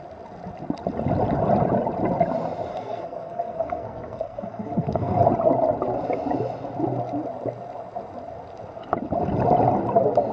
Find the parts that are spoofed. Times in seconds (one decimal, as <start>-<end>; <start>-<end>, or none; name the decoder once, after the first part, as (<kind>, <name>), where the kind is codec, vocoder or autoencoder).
2.7-5.3 (codec, SNAC)